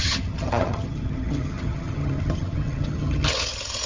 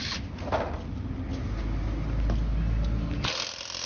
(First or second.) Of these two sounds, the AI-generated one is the first